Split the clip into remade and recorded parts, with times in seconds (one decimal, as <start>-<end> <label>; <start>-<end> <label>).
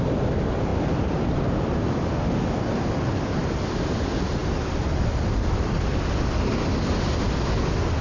0.0-8.0 recorded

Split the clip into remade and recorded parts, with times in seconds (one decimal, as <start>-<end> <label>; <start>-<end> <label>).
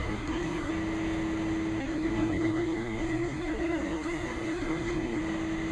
0.0-0.7 remade; 0.7-1.8 recorded; 1.8-5.2 remade; 5.2-5.7 recorded